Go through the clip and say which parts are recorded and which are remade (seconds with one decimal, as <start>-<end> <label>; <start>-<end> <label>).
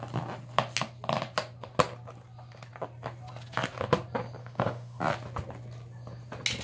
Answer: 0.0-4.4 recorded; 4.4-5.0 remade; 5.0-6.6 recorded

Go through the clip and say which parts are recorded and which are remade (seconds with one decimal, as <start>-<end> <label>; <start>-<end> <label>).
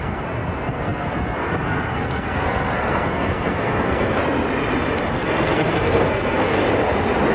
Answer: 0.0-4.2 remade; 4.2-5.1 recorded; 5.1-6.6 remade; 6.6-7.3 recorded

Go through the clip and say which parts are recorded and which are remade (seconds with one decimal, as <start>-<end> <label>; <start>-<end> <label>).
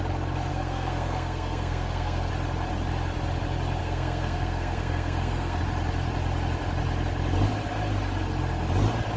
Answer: 0.0-0.5 recorded; 0.5-2.3 remade; 2.3-3.8 recorded; 3.8-5.6 remade; 5.6-9.2 recorded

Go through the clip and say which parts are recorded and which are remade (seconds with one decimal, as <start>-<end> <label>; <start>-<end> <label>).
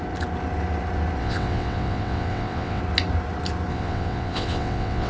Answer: 0.0-1.2 recorded; 1.2-2.8 remade; 2.8-3.7 recorded; 3.7-5.1 remade